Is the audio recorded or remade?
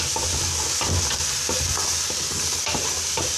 recorded